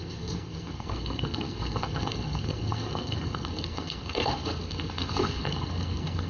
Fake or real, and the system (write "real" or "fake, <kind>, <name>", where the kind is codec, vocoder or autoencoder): fake, codec, SNAC